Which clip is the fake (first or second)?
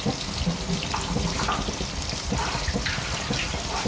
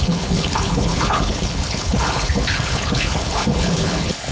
second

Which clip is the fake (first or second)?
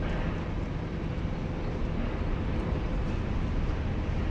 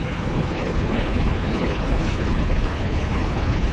second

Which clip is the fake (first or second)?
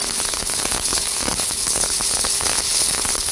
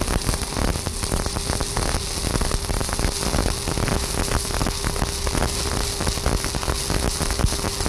first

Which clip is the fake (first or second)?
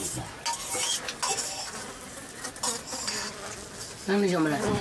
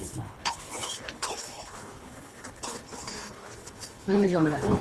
second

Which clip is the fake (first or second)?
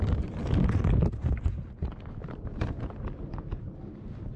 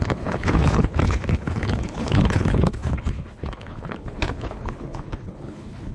second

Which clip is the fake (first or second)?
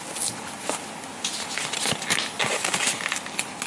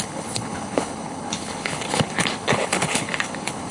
second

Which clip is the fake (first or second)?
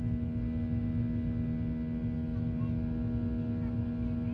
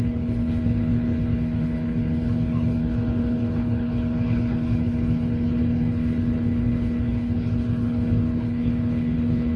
second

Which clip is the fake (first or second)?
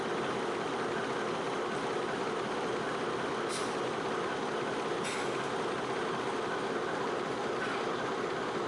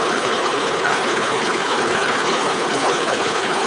second